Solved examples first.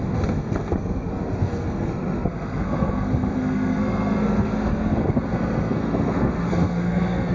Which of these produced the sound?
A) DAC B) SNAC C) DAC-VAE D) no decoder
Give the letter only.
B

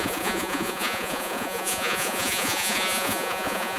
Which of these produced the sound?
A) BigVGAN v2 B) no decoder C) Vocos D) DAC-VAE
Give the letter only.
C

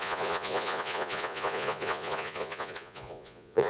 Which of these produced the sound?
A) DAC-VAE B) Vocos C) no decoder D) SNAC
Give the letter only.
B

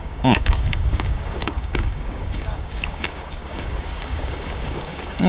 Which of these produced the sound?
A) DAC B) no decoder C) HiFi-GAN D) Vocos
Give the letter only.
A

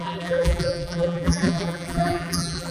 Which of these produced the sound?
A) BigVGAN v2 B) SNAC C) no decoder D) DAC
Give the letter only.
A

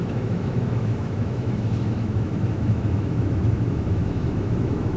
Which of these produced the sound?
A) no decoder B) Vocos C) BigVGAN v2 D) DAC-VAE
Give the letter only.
D